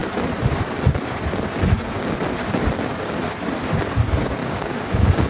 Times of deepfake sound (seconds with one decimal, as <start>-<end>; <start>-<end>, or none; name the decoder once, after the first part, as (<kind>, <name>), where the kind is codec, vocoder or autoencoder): 4.4-5.3 (codec, DAC)